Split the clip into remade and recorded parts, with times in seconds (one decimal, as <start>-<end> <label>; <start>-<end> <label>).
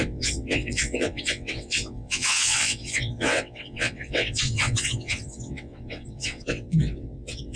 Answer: 0.0-7.6 remade